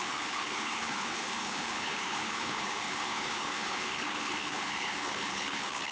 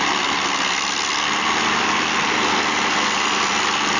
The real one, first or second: second